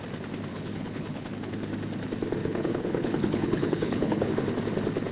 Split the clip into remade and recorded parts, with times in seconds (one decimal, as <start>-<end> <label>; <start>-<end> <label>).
0.0-0.5 recorded; 0.5-1.3 remade; 1.3-2.4 recorded; 2.4-4.3 remade; 4.3-5.1 recorded